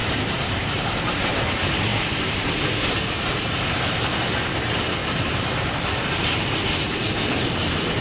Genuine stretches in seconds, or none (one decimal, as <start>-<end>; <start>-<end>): 1.4-1.9; 3.5-5.0; 5.8-8.0